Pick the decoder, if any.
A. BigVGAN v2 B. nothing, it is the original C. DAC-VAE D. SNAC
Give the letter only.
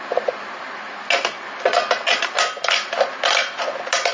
B